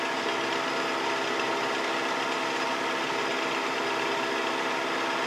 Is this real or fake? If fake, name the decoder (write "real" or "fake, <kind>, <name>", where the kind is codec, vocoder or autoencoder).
real